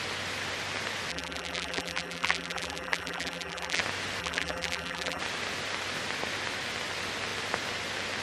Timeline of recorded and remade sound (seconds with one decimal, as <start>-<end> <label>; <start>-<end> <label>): 0.0-1.1 recorded; 1.1-3.8 remade; 3.8-4.2 recorded; 4.2-5.2 remade; 5.2-8.2 recorded